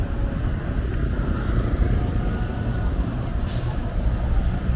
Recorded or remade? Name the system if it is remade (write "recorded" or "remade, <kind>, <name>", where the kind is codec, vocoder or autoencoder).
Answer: remade, vocoder, BigVGAN v2